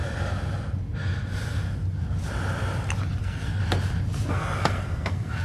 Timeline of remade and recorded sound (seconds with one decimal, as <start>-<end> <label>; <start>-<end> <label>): 0.0-3.2 recorded; 3.2-3.6 remade; 3.6-4.3 recorded; 4.3-5.4 remade